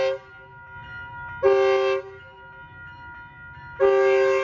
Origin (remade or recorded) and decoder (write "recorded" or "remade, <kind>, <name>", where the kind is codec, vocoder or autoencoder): recorded